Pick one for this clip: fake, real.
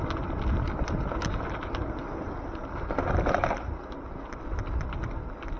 real